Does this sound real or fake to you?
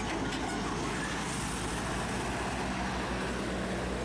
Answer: real